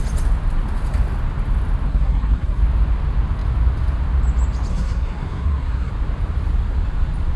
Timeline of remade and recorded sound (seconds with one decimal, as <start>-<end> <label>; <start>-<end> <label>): 0.0-1.9 recorded; 1.9-2.6 remade; 2.6-4.7 recorded; 4.7-5.9 remade; 5.9-7.4 recorded